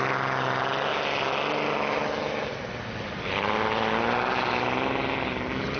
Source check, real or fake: real